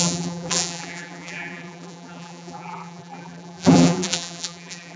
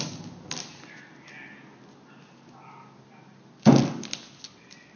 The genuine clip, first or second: second